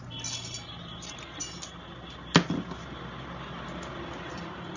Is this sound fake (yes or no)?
no